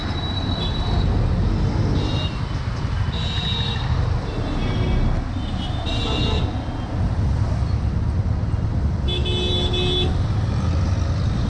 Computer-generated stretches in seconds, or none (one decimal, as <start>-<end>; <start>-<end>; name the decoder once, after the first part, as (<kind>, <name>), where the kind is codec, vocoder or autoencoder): none